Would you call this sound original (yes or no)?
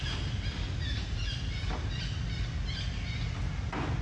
yes